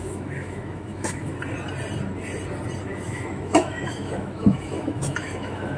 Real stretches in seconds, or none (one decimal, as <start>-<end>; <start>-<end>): 1.3-2.8

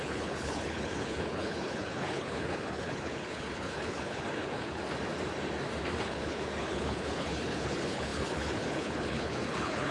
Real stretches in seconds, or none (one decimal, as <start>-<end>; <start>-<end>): 4.8-6.0

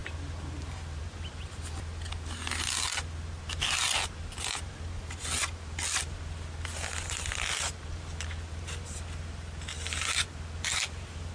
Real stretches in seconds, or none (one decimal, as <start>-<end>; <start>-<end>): 0.0-11.3

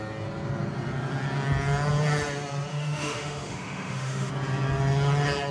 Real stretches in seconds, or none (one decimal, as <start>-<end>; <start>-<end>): 0.0-2.7; 4.3-5.5

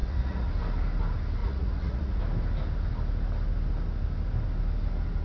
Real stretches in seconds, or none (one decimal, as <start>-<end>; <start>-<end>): 0.5-1.4; 2.2-5.2